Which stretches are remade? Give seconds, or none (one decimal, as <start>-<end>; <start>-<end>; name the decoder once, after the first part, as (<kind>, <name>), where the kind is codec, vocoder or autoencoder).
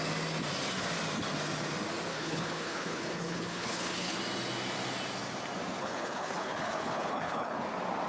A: 2.1-4.2 (codec, HILCodec); 5.8-7.6